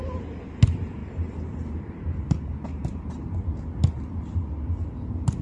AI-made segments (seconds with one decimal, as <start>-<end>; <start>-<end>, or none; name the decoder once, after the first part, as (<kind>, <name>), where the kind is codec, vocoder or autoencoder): 1.0-3.3 (vocoder, BigVGAN v2)